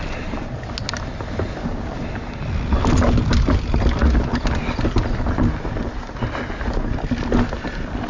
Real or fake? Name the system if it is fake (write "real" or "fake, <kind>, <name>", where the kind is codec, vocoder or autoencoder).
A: real